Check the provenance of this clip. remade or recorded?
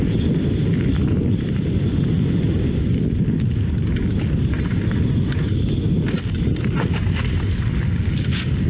recorded